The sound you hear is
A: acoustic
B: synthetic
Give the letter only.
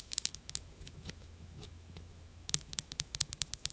B